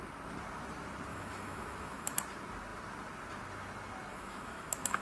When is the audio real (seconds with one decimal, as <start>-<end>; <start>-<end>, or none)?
0.0-1.1; 2.2-4.1